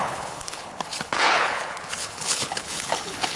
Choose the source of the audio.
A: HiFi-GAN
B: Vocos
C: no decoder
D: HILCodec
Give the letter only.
D